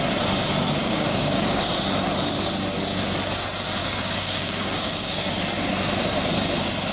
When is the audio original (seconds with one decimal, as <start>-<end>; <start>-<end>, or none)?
0.0-0.8; 1.6-3.8; 5.2-6.9